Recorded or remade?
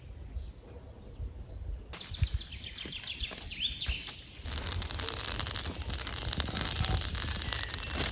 recorded